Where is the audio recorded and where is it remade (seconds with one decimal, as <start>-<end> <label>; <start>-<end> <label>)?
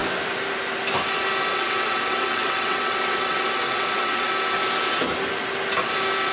0.0-1.5 recorded; 1.5-4.3 remade; 4.3-6.3 recorded